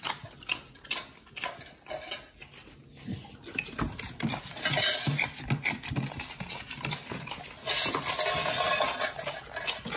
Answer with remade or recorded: recorded